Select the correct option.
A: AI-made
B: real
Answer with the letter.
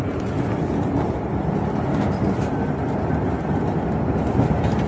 B